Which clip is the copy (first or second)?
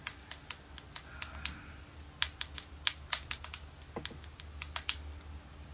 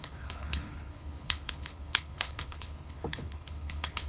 second